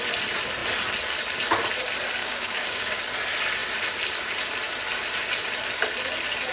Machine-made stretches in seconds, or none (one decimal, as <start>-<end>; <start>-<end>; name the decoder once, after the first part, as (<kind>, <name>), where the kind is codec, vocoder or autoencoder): 2.2-3.0 (codec, DAC)